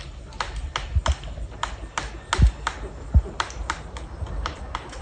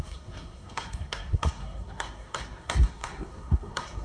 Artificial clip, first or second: second